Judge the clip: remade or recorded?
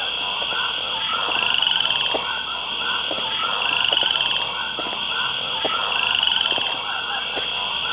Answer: recorded